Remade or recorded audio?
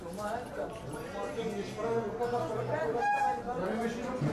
recorded